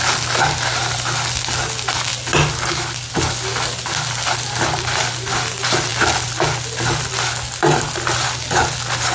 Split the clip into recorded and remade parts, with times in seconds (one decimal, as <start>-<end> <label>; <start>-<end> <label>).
0.0-9.1 recorded